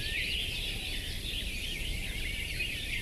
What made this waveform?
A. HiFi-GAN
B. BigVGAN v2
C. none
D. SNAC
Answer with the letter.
B